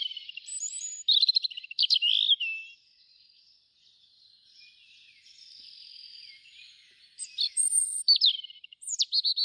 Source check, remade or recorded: remade